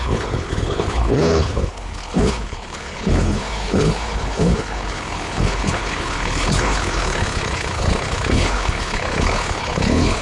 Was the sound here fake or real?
fake